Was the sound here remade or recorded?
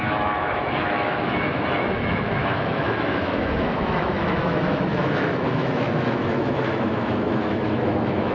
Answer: remade